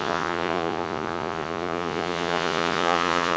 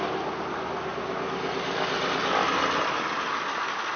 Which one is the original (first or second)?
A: second